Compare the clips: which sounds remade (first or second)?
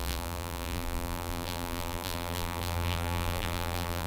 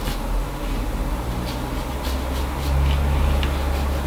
first